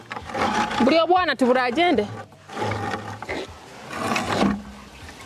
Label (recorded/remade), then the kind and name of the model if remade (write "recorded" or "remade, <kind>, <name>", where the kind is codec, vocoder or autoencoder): recorded